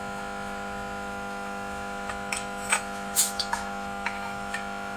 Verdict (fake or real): fake